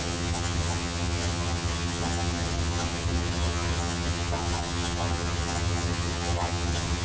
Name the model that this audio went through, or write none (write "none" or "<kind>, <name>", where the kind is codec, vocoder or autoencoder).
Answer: vocoder, HiFi-GAN